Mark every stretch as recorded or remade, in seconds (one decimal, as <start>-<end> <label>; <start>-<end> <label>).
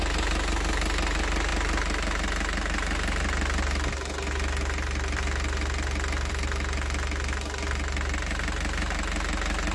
0.0-9.7 recorded